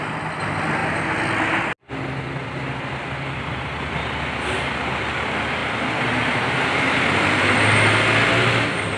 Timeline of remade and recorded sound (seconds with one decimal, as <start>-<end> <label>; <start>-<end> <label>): 0.0-9.0 recorded